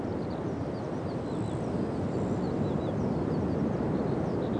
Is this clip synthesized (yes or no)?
no